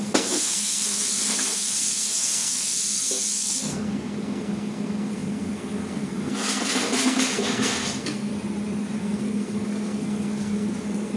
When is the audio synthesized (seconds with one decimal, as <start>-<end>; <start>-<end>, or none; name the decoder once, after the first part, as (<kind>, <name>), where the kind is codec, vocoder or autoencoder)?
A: 0.0-8.3 (codec, SNAC); 9.0-11.2